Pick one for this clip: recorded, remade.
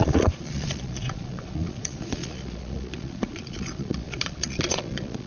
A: remade